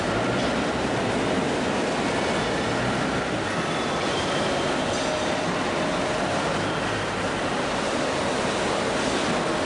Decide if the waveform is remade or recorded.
recorded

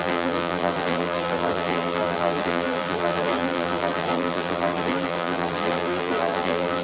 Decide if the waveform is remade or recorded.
remade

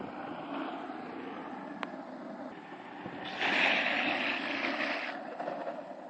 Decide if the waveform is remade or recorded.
remade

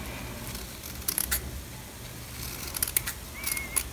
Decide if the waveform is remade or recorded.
recorded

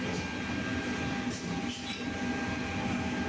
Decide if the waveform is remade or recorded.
recorded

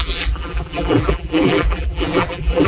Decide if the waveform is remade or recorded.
remade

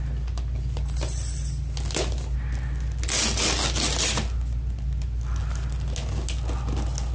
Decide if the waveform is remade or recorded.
recorded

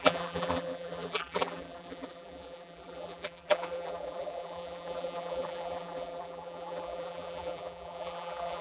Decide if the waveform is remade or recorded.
remade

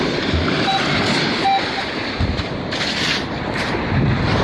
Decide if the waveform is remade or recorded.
remade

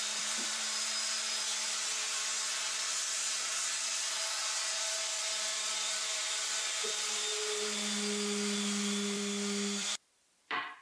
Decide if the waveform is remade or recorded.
remade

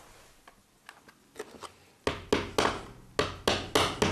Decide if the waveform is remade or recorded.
recorded